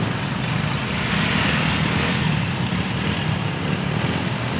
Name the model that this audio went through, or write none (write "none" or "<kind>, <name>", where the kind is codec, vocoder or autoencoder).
none